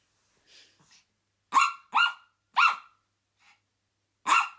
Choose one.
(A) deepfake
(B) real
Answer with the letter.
B